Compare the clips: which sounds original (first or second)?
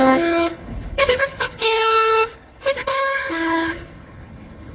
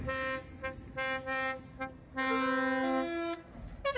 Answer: second